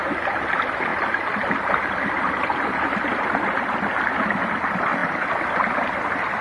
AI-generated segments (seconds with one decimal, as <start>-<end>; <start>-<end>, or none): 0.9-4.2